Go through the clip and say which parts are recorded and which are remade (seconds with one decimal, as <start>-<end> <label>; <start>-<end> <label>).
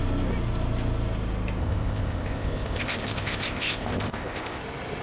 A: 0.0-1.6 recorded; 1.6-4.6 remade; 4.6-5.0 recorded